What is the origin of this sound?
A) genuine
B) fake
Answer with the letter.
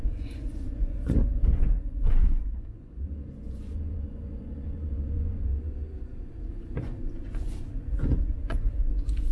B